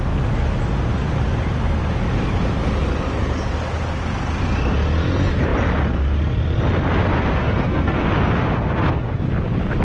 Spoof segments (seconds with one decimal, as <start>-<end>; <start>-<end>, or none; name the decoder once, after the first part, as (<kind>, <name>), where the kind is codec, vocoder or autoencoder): 7.4-8.0 (codec, SNAC)